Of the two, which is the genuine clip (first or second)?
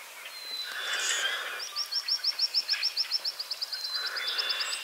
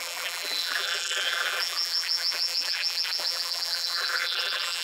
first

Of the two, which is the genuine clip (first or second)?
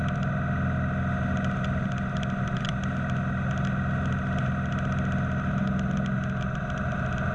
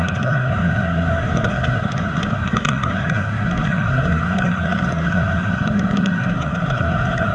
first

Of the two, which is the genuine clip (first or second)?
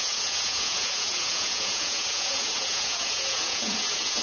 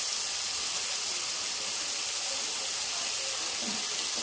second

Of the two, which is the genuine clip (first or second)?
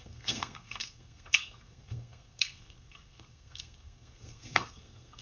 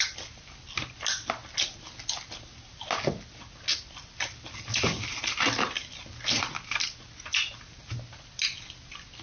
second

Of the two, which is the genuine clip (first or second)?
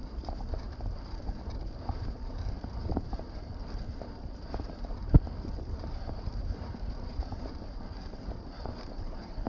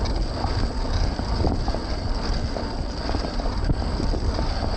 second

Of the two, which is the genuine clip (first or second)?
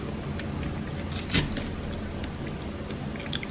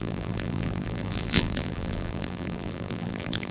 first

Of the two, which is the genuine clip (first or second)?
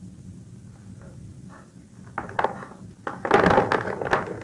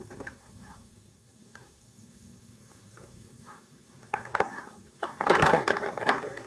first